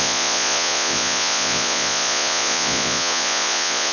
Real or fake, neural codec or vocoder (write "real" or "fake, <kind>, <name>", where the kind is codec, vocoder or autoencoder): fake, vocoder, Vocos